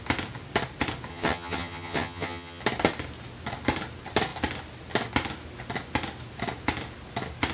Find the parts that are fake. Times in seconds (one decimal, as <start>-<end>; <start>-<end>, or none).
1.1-2.6